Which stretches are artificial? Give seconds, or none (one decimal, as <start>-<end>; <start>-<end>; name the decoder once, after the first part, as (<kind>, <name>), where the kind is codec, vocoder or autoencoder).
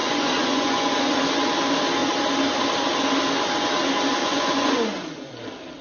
0.0-1.2 (vocoder, Vocos); 4.2-5.3